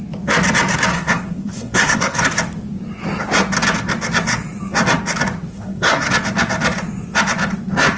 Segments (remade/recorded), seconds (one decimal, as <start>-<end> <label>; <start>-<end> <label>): 0.0-0.9 recorded; 0.9-2.2 remade; 2.2-5.5 recorded; 5.5-6.1 remade; 6.1-8.0 recorded